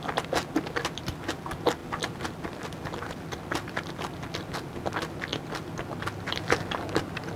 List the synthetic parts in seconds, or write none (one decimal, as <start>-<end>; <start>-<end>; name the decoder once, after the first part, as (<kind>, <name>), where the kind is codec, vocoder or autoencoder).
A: none